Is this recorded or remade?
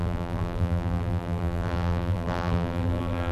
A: remade